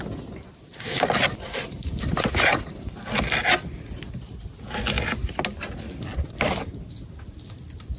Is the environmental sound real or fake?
real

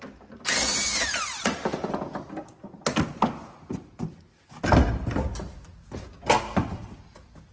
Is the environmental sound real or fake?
real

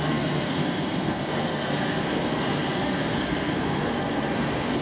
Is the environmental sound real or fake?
fake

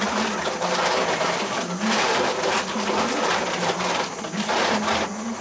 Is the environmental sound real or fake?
real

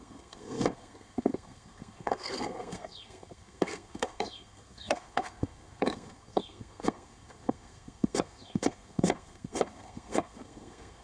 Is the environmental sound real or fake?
fake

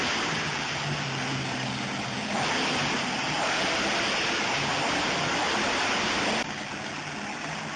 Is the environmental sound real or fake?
real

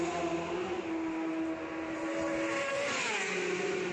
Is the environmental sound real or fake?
real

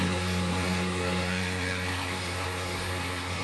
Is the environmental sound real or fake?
fake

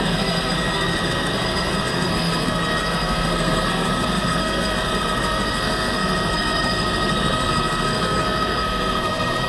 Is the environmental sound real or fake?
fake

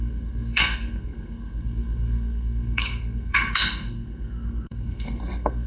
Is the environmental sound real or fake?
fake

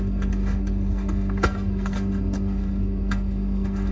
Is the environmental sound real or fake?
fake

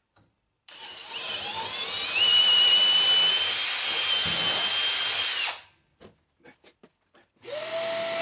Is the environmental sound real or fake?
real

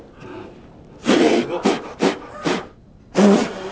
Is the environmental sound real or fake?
real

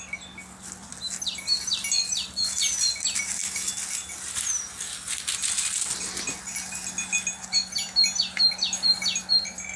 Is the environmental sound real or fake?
real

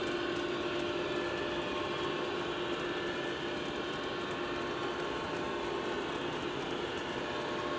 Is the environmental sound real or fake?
real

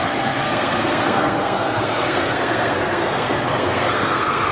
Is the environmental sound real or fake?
fake